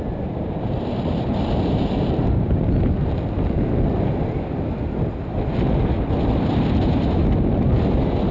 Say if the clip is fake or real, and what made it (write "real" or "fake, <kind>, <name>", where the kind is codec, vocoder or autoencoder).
real